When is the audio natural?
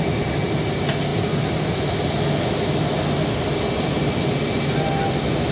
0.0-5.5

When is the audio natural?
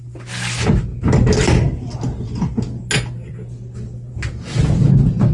0.0-5.3